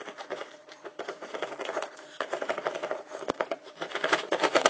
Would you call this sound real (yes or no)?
no